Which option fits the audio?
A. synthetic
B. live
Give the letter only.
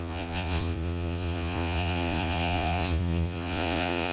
A